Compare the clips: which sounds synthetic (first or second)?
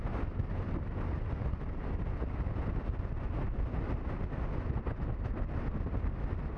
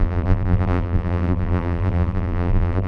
second